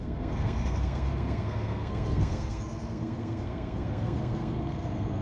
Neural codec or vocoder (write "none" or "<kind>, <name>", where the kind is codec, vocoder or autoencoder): codec, SNAC